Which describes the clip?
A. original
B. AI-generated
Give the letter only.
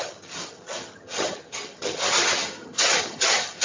B